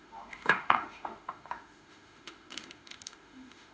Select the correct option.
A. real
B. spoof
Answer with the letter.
B